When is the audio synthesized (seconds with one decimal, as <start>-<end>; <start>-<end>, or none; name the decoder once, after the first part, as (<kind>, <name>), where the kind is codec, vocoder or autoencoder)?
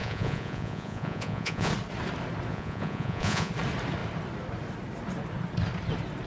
0.0-1.7 (vocoder, Vocos); 2.5-3.5